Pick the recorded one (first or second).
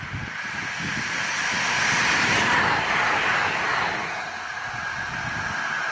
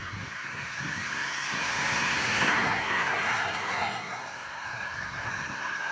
first